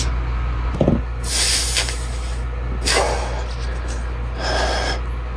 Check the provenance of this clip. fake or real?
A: real